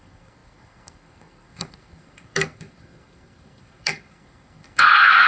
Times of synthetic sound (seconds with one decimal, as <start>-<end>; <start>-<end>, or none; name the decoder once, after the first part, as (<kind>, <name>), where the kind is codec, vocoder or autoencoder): 0.0-5.3 (codec, SNAC)